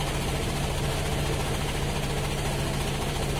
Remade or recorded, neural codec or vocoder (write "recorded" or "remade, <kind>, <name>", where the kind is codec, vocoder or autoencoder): recorded